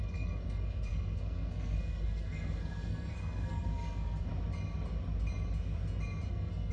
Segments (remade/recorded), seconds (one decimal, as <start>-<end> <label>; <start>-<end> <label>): 0.0-4.3 remade; 4.3-6.3 recorded; 6.3-6.7 remade